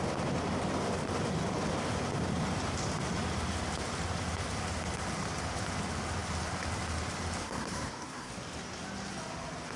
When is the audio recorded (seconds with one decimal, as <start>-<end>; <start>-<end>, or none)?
0.0-7.4; 8.3-9.8